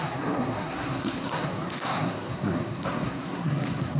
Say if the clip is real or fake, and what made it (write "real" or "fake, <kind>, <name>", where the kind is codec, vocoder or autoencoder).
fake, codec, SNAC